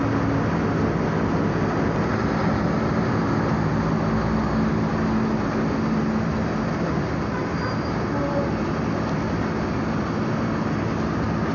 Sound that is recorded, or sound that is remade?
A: recorded